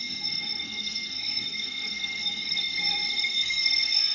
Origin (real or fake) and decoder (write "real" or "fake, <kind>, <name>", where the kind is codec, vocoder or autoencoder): fake, codec, SNAC